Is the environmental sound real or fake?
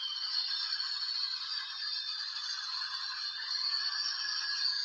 real